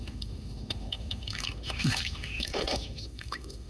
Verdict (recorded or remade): remade